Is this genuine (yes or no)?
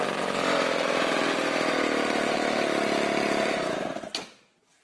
no